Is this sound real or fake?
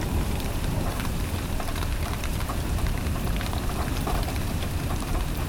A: fake